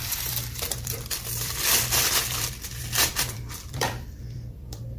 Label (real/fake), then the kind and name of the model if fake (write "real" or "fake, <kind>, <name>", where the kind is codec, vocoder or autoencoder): fake, vocoder, BigVGAN v2